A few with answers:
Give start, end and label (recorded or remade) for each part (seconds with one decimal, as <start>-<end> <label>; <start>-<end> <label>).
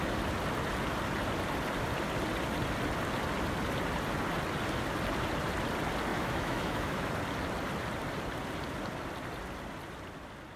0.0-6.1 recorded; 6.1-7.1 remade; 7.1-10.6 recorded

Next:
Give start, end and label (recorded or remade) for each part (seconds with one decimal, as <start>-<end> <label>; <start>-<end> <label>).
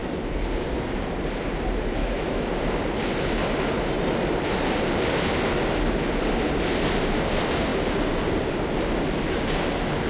0.0-2.0 recorded; 2.0-2.5 remade; 2.5-10.1 recorded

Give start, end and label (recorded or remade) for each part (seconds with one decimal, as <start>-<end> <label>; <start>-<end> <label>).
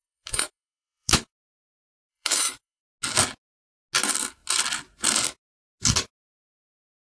0.0-1.3 remade; 1.3-2.1 recorded; 2.1-2.8 remade; 2.8-7.2 recorded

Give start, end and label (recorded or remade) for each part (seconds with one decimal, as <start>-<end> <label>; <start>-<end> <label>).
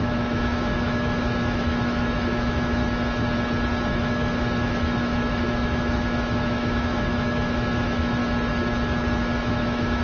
0.0-2.8 remade; 2.8-4.0 recorded; 4.0-8.2 remade; 8.2-9.2 recorded; 9.2-10.0 remade